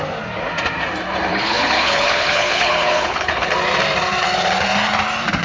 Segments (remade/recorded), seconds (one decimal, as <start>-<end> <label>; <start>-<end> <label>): 0.0-1.3 recorded; 1.3-3.5 remade; 3.5-5.4 recorded